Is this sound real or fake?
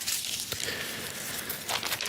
real